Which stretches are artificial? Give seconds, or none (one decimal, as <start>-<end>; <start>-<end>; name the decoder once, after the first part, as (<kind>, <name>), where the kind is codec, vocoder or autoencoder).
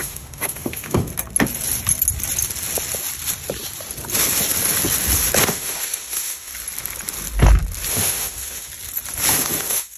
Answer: 0.0-1.1 (autoencoder, DAC-VAE); 5.4-6.5; 7.9-8.7; 9.3-10.0